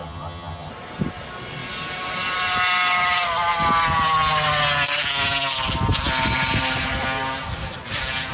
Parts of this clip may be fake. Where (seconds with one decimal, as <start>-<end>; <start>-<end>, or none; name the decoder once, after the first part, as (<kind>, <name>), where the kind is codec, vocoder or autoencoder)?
0.0-0.7 (vocoder, HiFi-GAN)